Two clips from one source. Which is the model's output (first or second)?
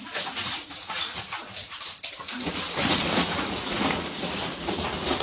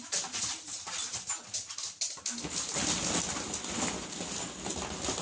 first